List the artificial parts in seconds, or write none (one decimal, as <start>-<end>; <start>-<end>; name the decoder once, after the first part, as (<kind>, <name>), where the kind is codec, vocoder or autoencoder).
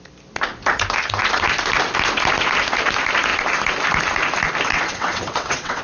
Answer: 4.7-5.8 (vocoder, WaveNeXt)